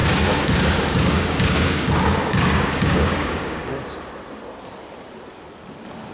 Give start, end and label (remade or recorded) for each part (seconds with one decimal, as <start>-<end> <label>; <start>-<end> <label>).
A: 0.0-3.7 remade; 3.7-6.1 recorded